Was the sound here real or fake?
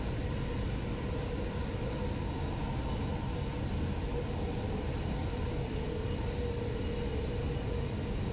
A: real